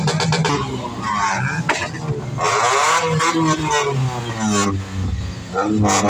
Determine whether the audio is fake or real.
real